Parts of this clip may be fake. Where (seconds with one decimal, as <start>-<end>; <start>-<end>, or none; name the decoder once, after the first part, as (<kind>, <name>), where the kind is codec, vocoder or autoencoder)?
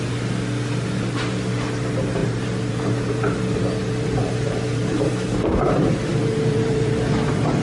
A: 2.2-2.8 (vocoder, BigVGAN v2); 3.8-5.1; 6.1-7.0